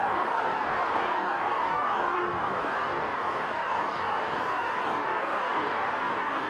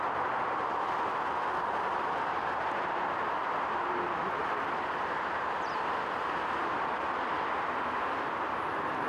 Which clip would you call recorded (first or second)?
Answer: second